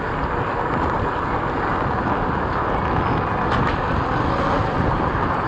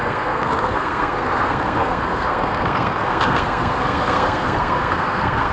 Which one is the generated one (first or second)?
second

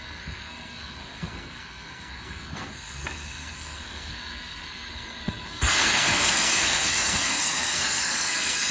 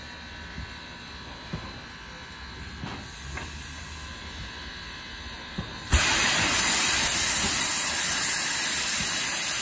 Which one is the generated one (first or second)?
first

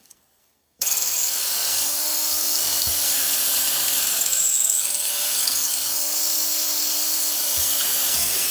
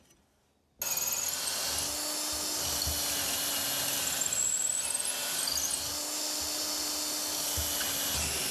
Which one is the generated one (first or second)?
first